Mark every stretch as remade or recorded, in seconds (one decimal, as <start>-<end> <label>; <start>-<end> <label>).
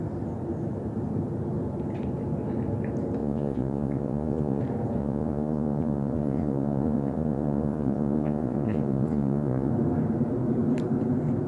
0.0-3.2 recorded; 3.2-4.6 remade; 4.6-5.0 recorded; 5.0-9.7 remade; 9.7-11.5 recorded